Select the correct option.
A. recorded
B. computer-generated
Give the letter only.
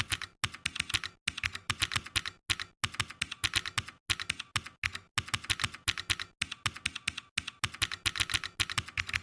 A